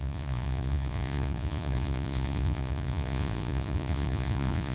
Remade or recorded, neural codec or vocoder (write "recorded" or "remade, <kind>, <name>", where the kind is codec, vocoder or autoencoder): remade, vocoder, Vocos